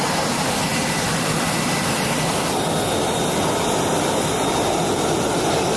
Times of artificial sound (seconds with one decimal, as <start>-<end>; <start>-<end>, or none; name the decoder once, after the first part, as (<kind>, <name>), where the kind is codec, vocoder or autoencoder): none